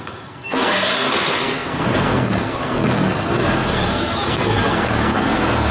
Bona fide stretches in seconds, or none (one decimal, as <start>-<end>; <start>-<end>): none